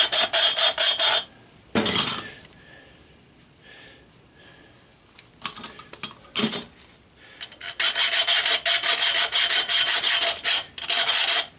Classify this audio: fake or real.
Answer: real